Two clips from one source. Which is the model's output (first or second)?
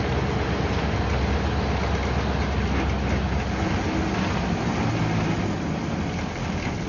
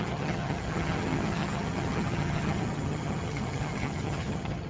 second